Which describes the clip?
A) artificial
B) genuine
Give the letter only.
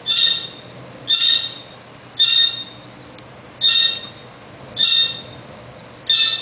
B